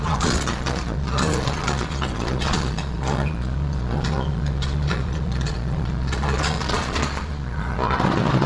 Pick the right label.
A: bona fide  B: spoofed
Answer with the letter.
B